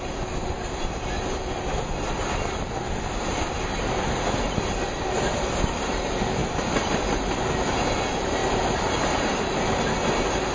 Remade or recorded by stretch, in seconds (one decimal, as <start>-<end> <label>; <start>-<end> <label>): 0.0-10.5 recorded